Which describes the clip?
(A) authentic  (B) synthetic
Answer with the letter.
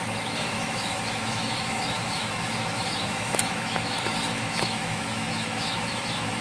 B